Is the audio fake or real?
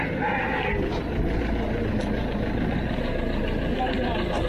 real